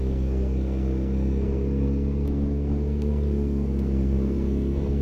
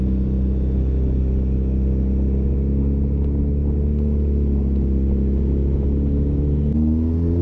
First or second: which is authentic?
second